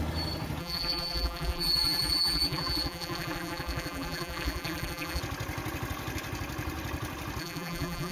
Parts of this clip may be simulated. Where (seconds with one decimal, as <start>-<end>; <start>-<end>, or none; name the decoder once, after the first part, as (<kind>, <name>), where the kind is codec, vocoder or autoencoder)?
0.6-5.2 (vocoder, BigVGAN v2); 7.4-8.1